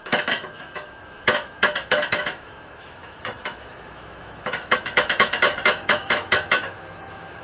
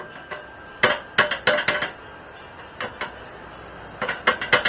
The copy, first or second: first